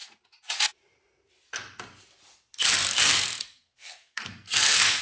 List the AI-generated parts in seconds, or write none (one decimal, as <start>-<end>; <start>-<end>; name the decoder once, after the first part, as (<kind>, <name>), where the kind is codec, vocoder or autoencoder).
3.0-5.0 (codec, SNAC)

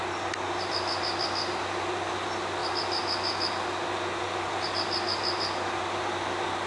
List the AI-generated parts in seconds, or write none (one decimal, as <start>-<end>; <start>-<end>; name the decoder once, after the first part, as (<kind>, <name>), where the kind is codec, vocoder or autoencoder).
none

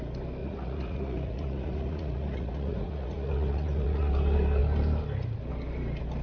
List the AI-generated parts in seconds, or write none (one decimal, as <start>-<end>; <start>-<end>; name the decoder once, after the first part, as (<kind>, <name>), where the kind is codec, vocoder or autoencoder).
0.4-4.1 (vocoder, Vocos)

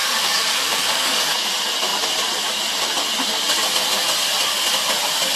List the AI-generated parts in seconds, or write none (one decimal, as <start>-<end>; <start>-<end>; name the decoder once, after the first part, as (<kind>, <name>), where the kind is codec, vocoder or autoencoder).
0.0-1.2 (codec, DAC)

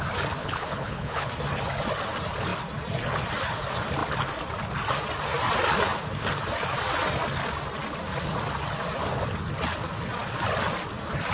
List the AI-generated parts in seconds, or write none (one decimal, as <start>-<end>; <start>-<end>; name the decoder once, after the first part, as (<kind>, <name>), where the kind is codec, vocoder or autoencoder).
0.4-1.3 (codec, HILCodec)

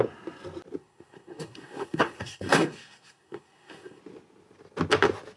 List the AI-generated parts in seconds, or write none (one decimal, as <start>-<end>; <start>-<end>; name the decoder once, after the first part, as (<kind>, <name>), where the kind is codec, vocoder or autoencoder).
0.8-4.0 (codec, SNAC)